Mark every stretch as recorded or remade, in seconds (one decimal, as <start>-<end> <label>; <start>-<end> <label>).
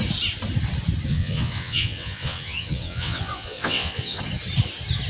0.0-1.1 recorded; 1.1-4.2 remade; 4.2-5.1 recorded